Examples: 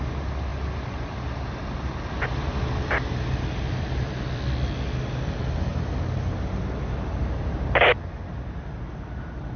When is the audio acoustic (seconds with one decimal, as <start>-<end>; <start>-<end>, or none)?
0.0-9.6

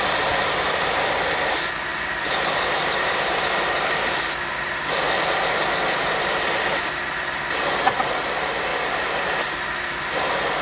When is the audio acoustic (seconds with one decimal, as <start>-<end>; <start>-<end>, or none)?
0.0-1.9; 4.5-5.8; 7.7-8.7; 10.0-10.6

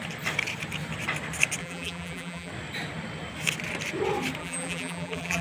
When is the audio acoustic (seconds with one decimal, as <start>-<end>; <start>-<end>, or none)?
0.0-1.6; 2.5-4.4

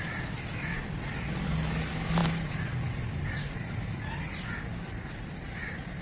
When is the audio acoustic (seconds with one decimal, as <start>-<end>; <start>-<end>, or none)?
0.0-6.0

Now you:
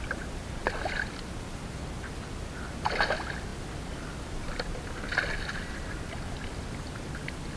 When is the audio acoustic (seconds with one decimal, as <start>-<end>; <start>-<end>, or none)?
0.0-0.6; 2.3-3.5; 5.7-7.6